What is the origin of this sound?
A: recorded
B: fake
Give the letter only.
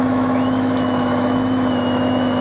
B